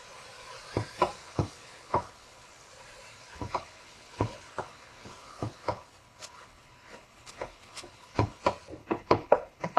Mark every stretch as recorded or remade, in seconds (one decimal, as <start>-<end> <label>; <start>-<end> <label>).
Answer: 0.0-1.2 recorded; 1.2-2.7 remade; 2.7-3.3 recorded; 3.3-8.4 remade; 8.4-8.8 recorded; 8.8-9.8 remade